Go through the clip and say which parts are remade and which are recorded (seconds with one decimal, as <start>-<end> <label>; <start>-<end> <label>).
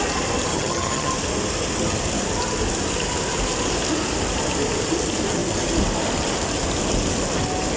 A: 0.0-0.5 recorded; 0.5-1.1 remade; 1.1-7.8 recorded